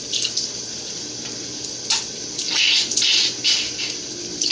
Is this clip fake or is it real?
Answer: real